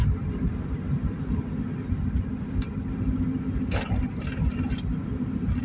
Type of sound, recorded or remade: recorded